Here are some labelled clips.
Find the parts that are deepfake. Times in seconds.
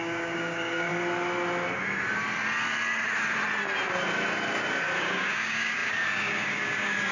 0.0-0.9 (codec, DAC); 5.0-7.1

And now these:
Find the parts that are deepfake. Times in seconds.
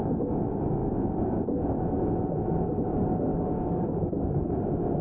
0.8-1.4 (codec, DAC); 3.3-4.6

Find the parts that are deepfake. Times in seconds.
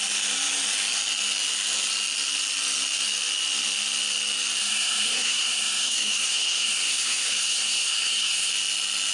4.6-8.5 (codec, SNAC)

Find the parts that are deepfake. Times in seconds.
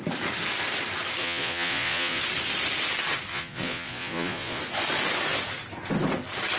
1.2-2.2 (vocoder, Vocos); 3.3-4.6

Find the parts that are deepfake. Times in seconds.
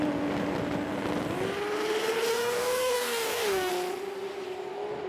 2.3-3.7 (codec, DAC)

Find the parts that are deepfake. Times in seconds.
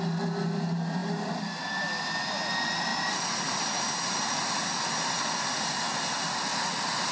none